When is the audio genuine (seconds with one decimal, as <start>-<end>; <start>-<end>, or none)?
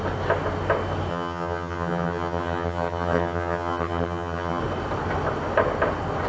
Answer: 0.0-1.1; 4.6-6.3